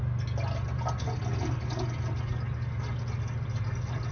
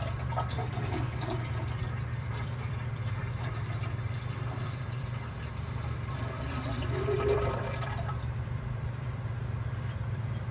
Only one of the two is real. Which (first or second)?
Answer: first